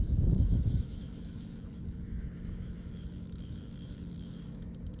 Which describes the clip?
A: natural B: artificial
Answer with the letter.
B